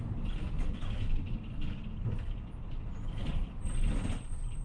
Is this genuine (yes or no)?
yes